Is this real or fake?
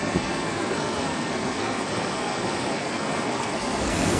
fake